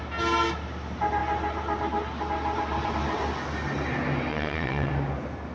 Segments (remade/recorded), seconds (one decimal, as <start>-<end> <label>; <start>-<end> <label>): 0.0-4.3 recorded; 4.3-4.9 remade; 4.9-5.5 recorded